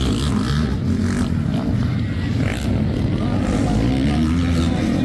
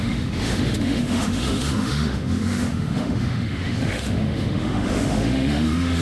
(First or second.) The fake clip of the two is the second